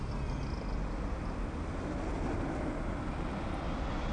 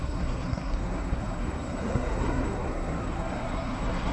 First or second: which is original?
first